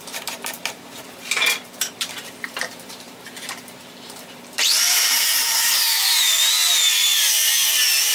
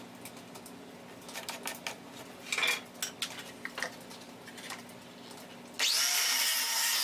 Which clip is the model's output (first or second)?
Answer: first